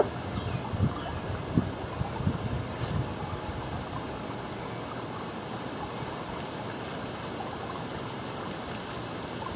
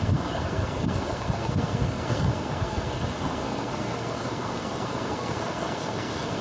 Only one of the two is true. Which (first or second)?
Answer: first